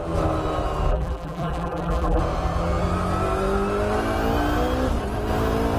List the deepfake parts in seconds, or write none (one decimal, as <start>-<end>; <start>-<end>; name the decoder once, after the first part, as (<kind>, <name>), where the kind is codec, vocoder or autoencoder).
0.9-2.2 (vocoder, BigVGAN v2)